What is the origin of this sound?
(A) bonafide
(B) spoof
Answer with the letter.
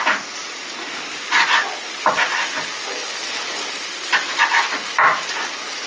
A